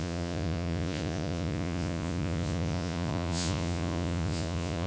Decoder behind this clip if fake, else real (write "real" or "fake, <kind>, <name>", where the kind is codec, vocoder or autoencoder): fake, vocoder, Vocos